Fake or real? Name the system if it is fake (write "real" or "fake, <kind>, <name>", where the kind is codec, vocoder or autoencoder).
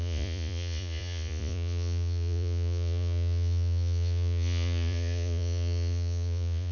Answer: fake, vocoder, Vocos